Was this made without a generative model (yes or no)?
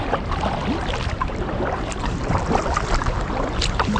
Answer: no